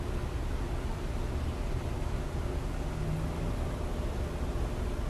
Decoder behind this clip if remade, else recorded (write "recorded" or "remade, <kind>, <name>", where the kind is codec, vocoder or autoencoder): recorded